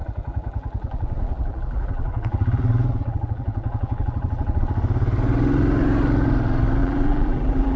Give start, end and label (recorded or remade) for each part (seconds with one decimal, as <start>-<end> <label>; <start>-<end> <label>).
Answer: 0.0-4.6 remade; 4.6-6.8 recorded; 6.8-7.8 remade